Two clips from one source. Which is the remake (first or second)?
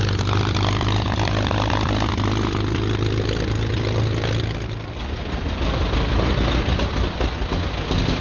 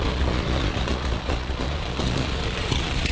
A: second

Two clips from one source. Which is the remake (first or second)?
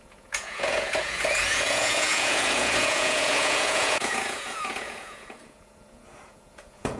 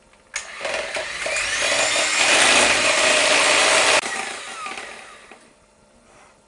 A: first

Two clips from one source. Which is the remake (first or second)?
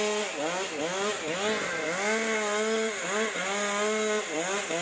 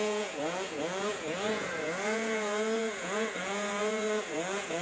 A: second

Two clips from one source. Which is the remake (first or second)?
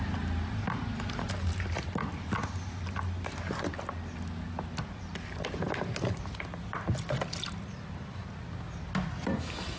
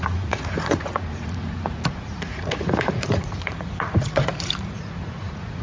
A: second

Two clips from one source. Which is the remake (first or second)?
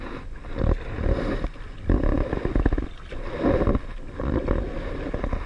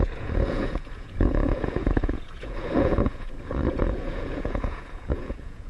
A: second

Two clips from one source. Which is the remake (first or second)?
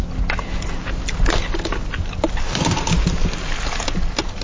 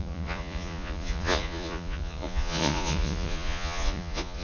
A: second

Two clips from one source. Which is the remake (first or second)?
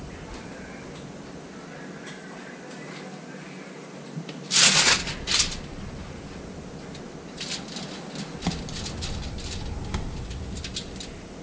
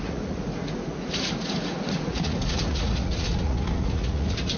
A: second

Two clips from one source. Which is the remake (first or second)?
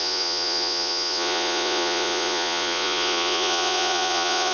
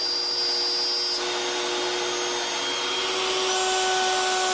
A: first